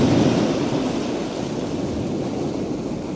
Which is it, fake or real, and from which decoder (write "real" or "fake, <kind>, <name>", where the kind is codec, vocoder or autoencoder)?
real